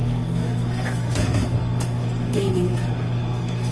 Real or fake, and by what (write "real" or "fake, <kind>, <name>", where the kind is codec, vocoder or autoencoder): fake, codec, SNAC